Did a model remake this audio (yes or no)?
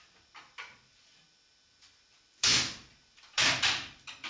yes